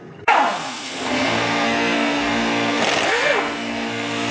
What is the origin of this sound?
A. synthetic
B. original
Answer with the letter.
A